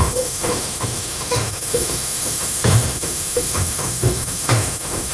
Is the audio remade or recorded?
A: remade